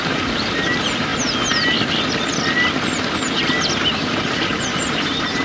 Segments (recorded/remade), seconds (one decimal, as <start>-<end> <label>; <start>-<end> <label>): 0.0-1.1 remade; 1.1-4.3 recorded; 4.3-5.4 remade